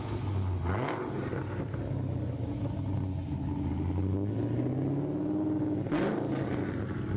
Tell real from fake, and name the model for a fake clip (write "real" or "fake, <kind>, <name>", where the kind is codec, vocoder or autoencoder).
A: real